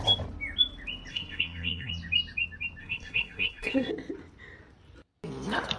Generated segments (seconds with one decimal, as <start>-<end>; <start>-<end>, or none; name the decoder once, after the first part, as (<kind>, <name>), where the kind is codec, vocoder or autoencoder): 1.1-1.9 (codec, SNAC); 2.8-3.9